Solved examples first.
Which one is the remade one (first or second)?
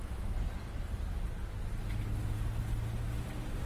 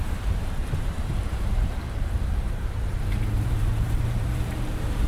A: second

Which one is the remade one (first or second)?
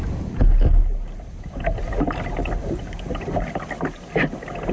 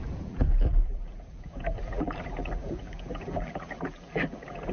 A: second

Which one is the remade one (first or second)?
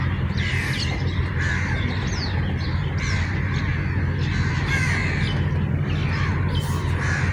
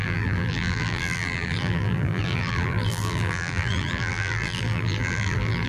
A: second